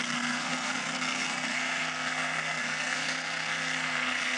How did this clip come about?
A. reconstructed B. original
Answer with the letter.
A